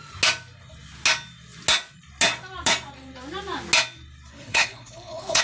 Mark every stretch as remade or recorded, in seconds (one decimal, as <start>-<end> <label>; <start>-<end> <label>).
0.0-4.3 recorded; 4.3-5.4 remade